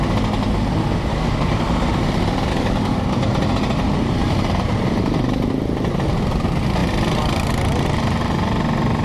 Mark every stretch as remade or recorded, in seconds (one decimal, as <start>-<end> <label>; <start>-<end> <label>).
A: 0.0-1.1 recorded; 1.1-1.6 remade; 1.6-2.5 recorded; 2.5-3.1 remade; 3.1-9.0 recorded